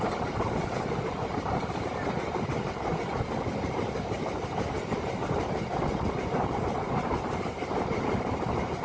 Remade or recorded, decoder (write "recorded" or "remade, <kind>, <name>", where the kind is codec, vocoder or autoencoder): remade, vocoder, BigVGAN v2